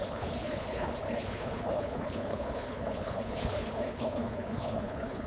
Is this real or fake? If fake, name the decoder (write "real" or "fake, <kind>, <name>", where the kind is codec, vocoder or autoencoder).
fake, codec, HILCodec